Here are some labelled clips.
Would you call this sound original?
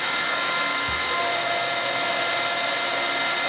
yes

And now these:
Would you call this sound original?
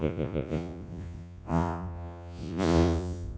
no